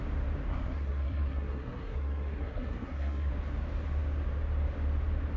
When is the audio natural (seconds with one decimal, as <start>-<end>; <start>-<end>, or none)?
0.0-0.5; 3.3-5.4